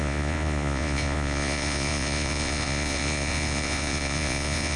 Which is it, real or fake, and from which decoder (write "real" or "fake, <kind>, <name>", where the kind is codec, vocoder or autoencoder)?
fake, vocoder, Vocos